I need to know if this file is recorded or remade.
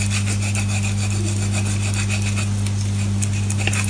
recorded